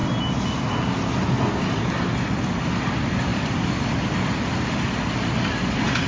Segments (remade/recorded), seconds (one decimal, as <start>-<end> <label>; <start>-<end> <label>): 0.0-6.1 recorded